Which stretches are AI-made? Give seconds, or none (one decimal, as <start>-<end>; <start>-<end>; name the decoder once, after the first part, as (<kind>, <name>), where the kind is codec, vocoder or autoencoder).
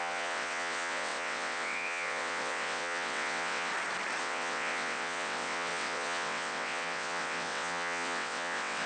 0.0-3.7 (vocoder, WaveNeXt); 4.2-8.9